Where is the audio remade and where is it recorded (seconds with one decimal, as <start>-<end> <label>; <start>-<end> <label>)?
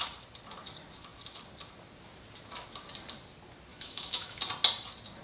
0.0-3.7 recorded; 3.7-4.4 remade; 4.4-5.2 recorded